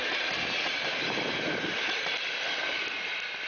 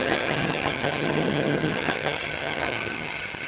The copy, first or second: second